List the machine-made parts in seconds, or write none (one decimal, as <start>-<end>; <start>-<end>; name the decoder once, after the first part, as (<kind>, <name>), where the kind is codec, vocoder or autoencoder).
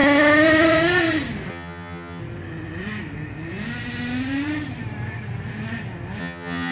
1.5-2.2 (vocoder, HiFi-GAN); 6.2-6.7